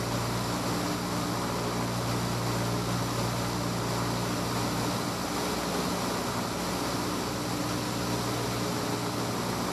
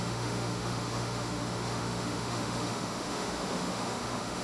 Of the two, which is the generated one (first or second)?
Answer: second